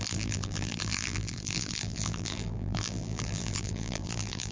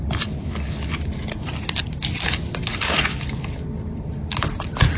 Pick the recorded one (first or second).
second